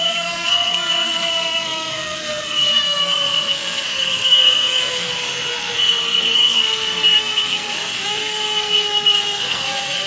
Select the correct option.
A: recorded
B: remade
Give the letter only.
B